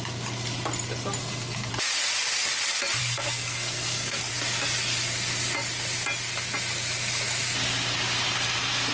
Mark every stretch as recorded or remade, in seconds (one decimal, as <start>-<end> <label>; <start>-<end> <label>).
0.0-1.2 recorded; 1.2-1.7 remade; 1.7-3.0 recorded; 3.0-4.3 remade; 4.3-8.9 recorded